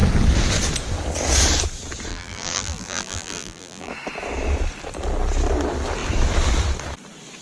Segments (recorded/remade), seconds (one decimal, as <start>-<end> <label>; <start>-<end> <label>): 0.0-2.1 recorded; 2.1-3.9 remade; 3.9-7.4 recorded